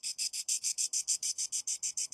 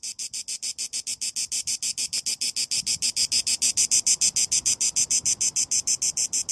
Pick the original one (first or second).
second